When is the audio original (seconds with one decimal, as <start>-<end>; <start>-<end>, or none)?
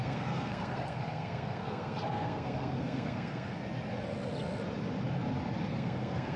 3.6-5.7